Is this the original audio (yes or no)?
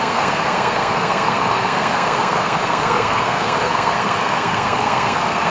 no